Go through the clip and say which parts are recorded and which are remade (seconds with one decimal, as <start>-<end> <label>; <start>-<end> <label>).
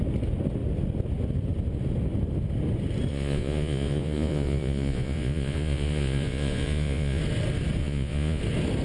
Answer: 0.0-3.1 recorded; 3.1-7.2 remade; 7.2-7.8 recorded; 7.8-8.4 remade; 8.4-8.8 recorded